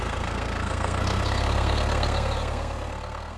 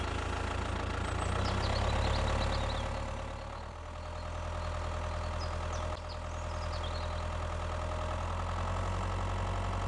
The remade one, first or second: first